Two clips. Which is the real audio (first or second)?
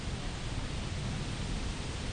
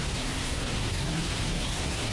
first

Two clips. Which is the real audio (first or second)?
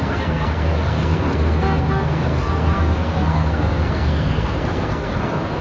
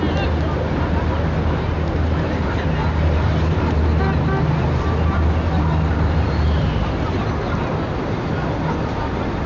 second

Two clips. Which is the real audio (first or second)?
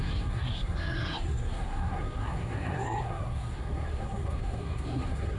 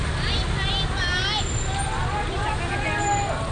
second